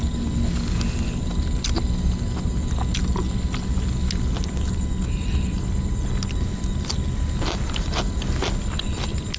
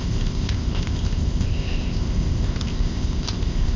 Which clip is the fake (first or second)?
second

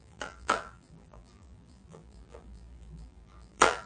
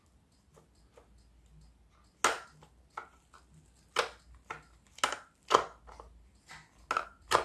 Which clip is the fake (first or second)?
first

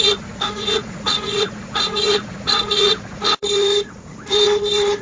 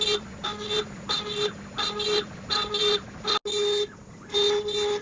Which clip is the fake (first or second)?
first